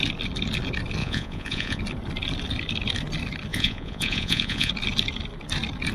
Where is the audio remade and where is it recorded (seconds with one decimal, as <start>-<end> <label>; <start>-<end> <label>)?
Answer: 0.0-1.0 recorded; 1.0-1.8 remade; 1.8-3.5 recorded; 3.5-4.7 remade; 4.7-5.9 recorded